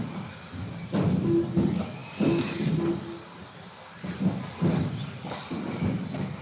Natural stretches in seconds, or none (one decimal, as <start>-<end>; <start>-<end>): 0.0-6.4